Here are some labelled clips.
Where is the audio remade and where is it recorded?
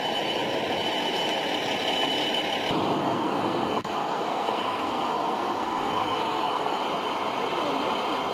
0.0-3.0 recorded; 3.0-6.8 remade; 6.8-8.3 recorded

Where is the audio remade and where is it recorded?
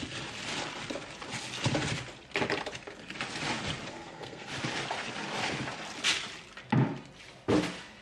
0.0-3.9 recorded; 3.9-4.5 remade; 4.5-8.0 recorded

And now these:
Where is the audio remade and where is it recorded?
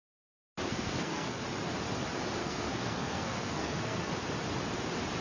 0.0-0.7 recorded; 0.7-1.4 remade; 1.4-2.4 recorded; 2.4-4.1 remade; 4.1-5.2 recorded